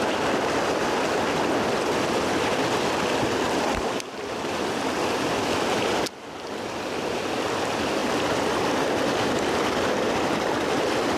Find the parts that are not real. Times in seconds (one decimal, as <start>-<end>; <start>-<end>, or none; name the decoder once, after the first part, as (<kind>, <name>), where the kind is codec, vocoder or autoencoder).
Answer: none